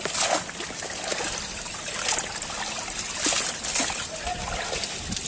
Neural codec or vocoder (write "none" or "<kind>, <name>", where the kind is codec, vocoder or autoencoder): none